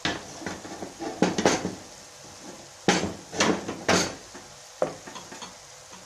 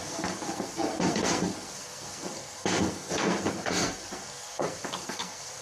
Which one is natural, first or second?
first